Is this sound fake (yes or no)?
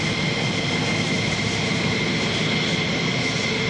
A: no